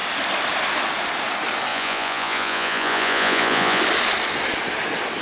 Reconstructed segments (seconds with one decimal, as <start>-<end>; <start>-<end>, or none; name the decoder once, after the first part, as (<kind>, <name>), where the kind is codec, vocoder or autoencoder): 1.7-3.8 (vocoder, Vocos)